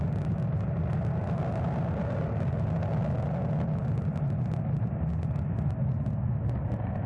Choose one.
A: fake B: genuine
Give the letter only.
B